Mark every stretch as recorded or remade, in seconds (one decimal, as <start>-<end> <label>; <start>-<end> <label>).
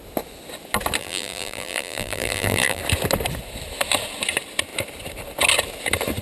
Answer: 0.0-1.0 recorded; 1.0-2.8 remade; 2.8-6.2 recorded